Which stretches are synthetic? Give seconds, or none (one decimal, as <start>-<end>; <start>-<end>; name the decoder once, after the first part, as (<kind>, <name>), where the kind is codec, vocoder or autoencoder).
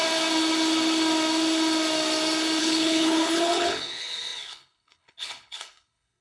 2.6-6.2 (codec, HILCodec)